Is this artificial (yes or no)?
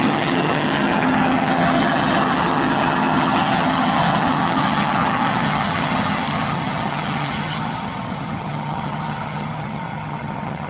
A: yes